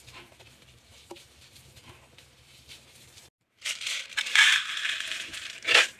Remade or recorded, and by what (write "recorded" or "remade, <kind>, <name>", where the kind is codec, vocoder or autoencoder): remade, vocoder, BigVGAN v2